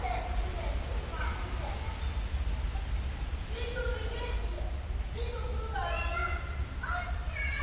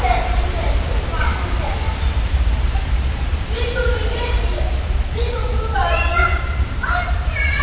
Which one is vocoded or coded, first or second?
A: second